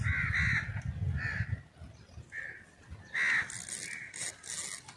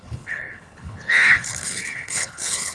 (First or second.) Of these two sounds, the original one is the first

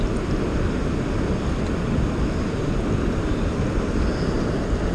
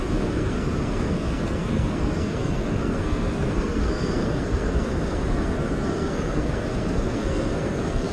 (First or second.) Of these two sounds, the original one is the first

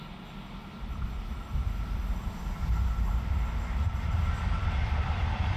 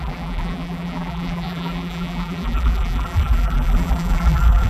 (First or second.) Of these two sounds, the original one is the first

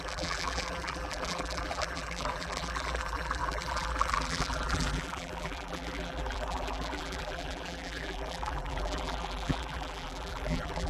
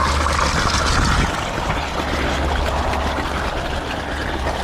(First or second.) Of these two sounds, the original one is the second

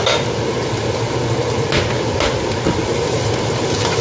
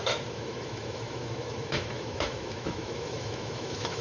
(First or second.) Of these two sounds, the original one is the first